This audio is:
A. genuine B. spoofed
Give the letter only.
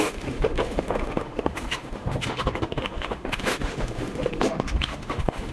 B